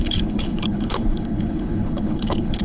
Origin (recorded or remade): remade